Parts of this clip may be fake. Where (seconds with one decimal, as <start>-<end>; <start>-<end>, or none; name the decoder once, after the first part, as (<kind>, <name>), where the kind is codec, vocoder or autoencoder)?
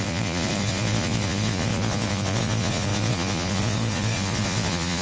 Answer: 0.0-5.0 (vocoder, Vocos)